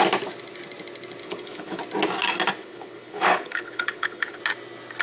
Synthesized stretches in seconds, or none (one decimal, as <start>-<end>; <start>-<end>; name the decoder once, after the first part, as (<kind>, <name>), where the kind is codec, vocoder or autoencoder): 1.2-1.8 (codec, HILCodec); 2.6-4.4